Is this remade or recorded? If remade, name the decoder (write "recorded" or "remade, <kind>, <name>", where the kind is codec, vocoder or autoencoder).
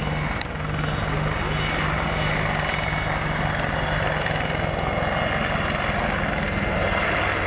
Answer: recorded